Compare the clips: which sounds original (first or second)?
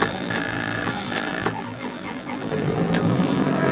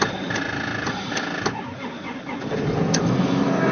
second